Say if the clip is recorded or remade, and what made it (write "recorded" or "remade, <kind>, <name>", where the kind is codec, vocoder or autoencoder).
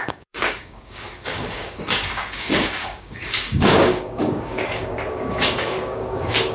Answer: remade, codec, DAC